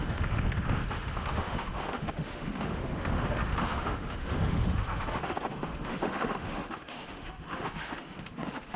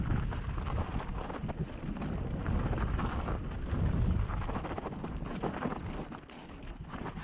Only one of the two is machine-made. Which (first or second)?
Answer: first